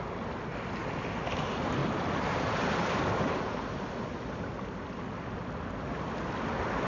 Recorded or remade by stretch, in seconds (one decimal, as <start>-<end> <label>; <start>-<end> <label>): 0.0-0.5 recorded; 0.5-1.2 remade; 1.2-1.8 recorded; 1.8-5.0 remade; 5.0-6.9 recorded

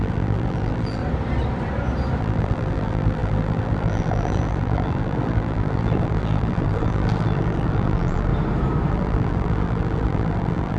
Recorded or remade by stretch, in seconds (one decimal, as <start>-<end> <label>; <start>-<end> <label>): 0.0-1.0 remade; 1.0-2.2 recorded; 2.2-8.3 remade; 8.3-8.9 recorded; 8.9-10.8 remade

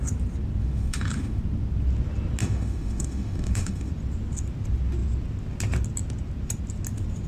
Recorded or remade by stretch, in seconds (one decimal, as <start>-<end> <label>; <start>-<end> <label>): 0.0-0.6 recorded; 0.6-1.4 remade; 1.4-2.4 recorded; 2.4-3.9 remade; 3.9-7.3 recorded

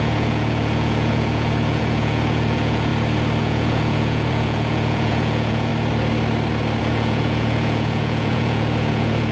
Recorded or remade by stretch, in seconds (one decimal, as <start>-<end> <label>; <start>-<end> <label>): 0.0-2.9 remade; 2.9-3.4 recorded; 3.4-5.7 remade; 5.7-6.8 recorded; 6.8-9.3 remade

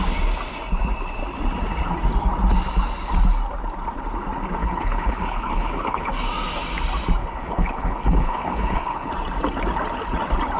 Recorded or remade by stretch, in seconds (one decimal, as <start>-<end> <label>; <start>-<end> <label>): 0.0-4.6 recorded; 4.6-6.1 remade; 6.1-7.2 recorded; 7.2-9.1 remade; 9.1-10.6 recorded